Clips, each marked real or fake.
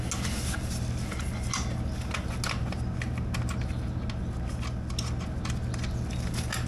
real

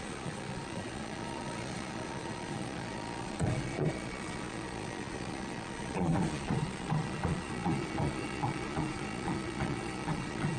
fake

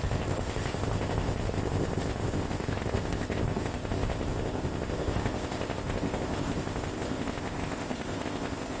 fake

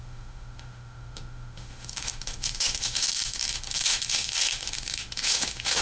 fake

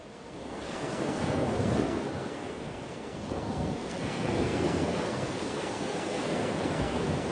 fake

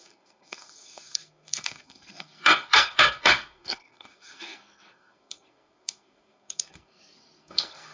fake